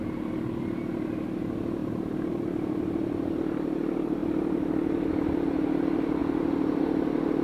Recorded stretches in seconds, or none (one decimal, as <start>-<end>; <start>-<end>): 0.0-1.8; 3.4-7.4